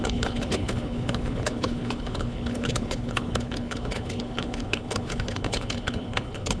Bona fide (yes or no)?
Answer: no